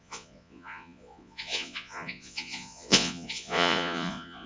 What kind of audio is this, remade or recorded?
remade